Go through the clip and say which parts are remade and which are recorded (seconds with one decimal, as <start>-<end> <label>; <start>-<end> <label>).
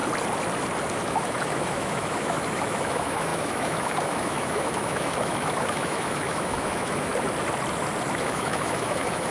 0.0-0.9 recorded; 0.9-7.1 remade; 7.1-8.1 recorded; 8.1-9.3 remade